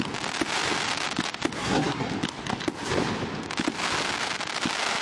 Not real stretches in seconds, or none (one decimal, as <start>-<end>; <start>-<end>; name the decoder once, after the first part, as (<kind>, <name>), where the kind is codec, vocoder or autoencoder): 1.6-2.1 (codec, SNAC)